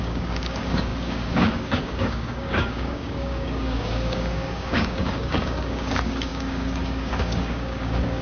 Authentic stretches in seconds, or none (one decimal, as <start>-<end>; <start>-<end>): none